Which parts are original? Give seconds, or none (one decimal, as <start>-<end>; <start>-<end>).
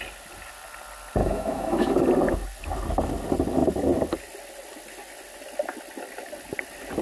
0.0-1.2; 1.9-7.0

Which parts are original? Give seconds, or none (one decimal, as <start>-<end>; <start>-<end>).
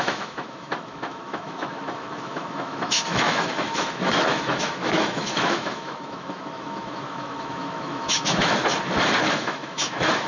8.6-9.3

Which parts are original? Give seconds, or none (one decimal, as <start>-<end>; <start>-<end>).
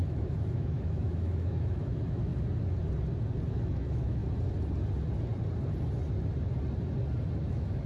2.3-3.5; 4.2-7.4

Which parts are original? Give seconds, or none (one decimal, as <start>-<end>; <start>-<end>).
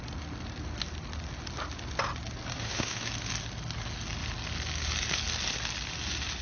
0.0-2.5; 3.1-6.4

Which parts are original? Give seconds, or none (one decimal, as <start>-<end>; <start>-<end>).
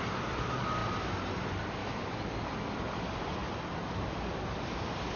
0.0-1.8; 2.3-5.2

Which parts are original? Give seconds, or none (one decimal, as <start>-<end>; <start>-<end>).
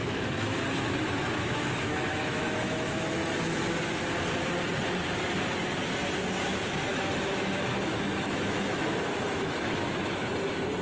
3.3-6.9; 10.3-10.8